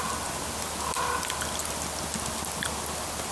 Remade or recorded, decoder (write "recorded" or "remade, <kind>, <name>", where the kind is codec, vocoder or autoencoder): recorded